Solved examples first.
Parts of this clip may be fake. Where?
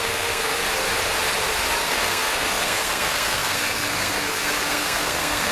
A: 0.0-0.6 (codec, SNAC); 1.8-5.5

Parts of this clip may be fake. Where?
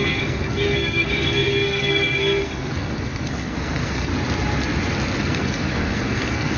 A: 0.0-4.1 (codec, SNAC); 5.2-6.6